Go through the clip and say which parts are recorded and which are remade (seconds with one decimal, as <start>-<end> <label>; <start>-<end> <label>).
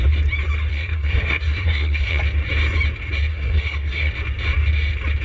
0.0-0.7 recorded; 0.7-2.2 remade; 2.2-3.3 recorded; 3.3-4.1 remade; 4.1-5.2 recorded